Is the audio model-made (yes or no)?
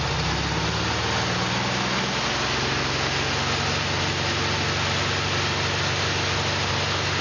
no